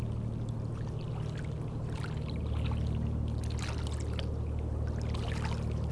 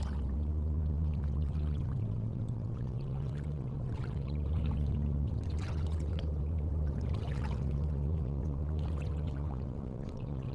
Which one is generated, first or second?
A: second